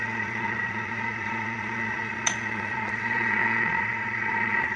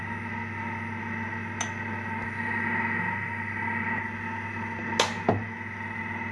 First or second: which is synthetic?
first